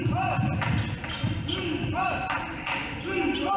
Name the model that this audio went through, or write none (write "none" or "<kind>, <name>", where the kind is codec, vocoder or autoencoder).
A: none